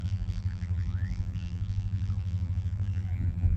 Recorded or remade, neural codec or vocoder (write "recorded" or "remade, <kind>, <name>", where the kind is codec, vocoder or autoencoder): remade, vocoder, BigVGAN v2